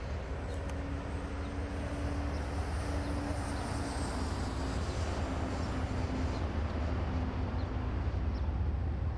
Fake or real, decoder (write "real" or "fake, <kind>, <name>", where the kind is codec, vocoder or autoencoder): real